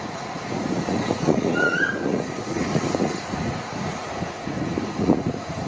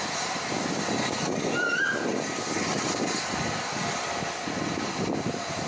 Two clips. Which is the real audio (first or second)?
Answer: second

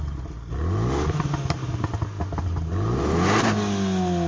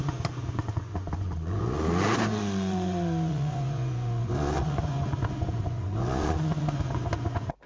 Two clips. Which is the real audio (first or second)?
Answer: first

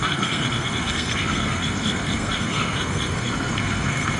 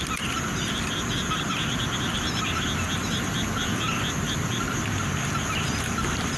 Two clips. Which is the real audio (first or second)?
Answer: second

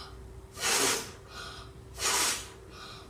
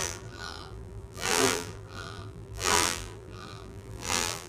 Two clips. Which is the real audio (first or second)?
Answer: first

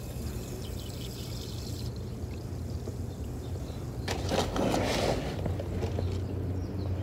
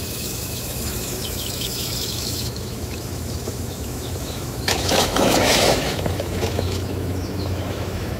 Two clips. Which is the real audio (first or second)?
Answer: first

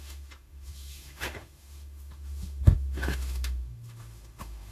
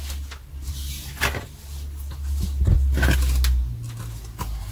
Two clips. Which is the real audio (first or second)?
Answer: second